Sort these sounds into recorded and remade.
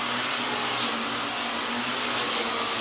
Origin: recorded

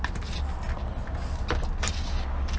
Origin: recorded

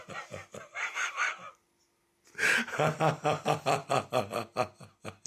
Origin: recorded